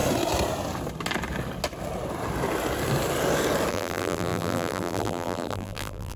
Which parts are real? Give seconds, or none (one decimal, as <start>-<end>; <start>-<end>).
0.0-3.7